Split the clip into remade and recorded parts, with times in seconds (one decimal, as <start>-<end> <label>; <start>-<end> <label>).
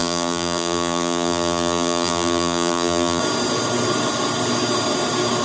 0.0-3.2 remade; 3.2-5.4 recorded